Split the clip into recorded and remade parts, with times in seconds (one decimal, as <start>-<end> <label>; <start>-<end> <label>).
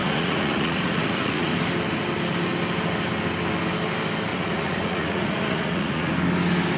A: 0.0-1.5 remade; 1.5-4.3 recorded; 4.3-6.1 remade; 6.1-6.8 recorded